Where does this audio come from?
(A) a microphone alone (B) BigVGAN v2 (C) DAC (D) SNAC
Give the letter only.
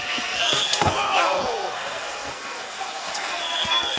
D